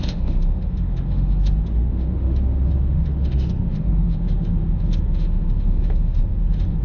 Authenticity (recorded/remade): remade